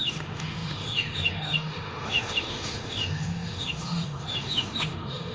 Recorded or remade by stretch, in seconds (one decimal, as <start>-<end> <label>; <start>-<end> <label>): 0.0-5.3 remade